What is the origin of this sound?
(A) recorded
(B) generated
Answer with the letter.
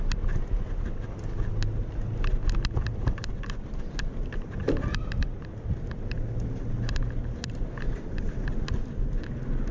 A